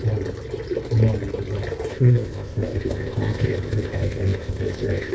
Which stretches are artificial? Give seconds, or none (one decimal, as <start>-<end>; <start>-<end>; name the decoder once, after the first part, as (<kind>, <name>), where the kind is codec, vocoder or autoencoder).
1.9-5.1 (codec, ZipCodec)